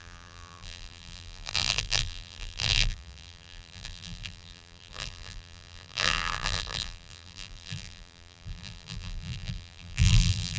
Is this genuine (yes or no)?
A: no